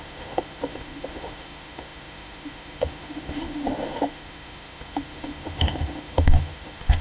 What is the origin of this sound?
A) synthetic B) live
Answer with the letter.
A